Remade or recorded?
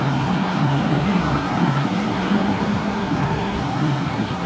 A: remade